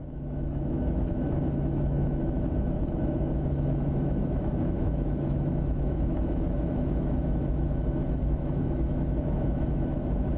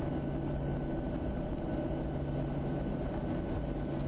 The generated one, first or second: first